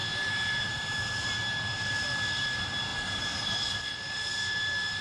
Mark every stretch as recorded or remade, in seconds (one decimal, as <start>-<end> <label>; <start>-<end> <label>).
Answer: 0.0-1.0 remade; 1.0-2.9 recorded; 2.9-3.7 remade; 3.7-5.0 recorded